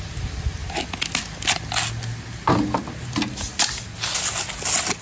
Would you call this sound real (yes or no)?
yes